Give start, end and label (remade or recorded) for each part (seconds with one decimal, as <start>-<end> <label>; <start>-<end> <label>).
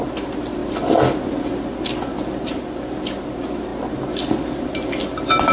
0.0-5.5 recorded